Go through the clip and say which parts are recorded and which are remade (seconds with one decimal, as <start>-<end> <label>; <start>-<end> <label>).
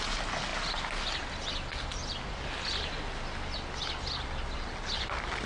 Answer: 0.0-5.5 recorded